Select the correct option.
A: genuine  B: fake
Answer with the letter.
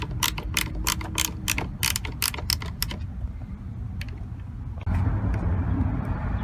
A